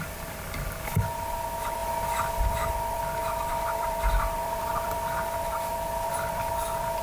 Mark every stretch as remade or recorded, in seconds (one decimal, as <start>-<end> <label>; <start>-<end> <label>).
0.0-1.8 remade; 1.8-2.4 recorded; 2.4-7.0 remade